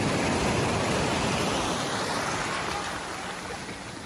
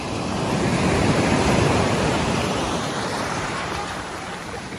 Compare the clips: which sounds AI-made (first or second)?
second